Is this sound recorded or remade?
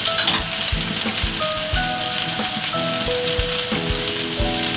recorded